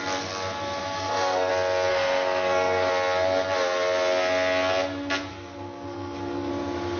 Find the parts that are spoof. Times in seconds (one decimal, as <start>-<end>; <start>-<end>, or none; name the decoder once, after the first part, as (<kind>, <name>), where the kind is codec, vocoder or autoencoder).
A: 0.8-1.5 (codec, SNAC); 1.9-2.9; 5.3-6.5

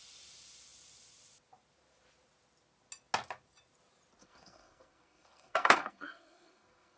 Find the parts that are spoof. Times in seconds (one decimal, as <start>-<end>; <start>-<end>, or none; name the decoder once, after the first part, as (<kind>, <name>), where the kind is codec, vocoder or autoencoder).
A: 4.2-7.0 (codec, SNAC)

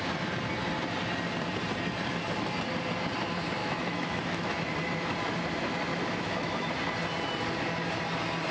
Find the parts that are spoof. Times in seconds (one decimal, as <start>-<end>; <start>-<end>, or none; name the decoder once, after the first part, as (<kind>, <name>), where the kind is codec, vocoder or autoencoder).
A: 3.6-4.6 (autoencoder, DAC-VAE); 5.9-6.7

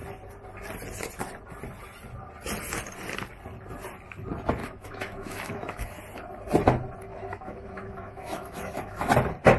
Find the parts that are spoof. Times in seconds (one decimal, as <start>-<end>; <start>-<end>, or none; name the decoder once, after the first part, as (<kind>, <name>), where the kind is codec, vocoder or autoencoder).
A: 4.6-6.0 (autoencoder, DAC-VAE); 7.1-9.1

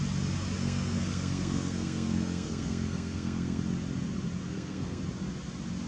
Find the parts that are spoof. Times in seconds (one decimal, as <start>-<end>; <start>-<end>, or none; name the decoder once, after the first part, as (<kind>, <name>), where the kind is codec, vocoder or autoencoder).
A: 0.6-3.6 (codec, SNAC); 4.5-5.0

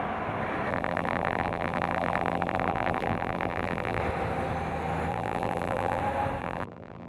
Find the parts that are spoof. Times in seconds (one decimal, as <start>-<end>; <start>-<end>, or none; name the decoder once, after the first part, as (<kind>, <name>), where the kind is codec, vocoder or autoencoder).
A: 0.7-4.0 (vocoder, BigVGAN v2); 5.1-6.0; 6.4-7.1